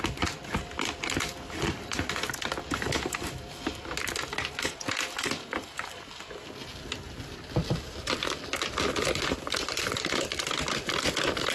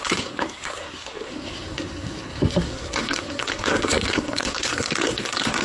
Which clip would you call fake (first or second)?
second